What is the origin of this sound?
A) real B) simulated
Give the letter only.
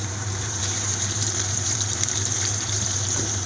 B